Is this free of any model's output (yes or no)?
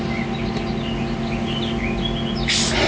yes